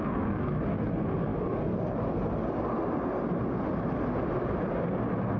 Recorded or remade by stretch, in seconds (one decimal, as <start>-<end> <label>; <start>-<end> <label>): 0.0-5.4 recorded